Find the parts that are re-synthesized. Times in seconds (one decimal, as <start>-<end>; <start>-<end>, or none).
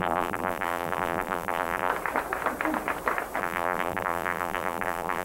0.0-1.9; 3.4-5.2